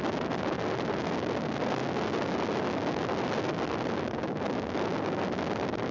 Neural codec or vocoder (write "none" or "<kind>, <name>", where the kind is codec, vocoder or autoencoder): none